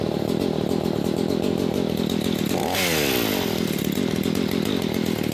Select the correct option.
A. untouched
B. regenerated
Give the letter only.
A